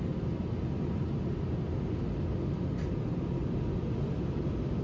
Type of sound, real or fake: real